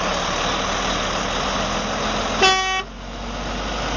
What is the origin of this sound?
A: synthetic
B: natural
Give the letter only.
B